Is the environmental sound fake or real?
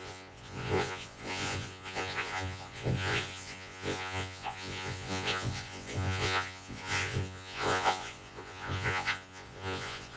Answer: fake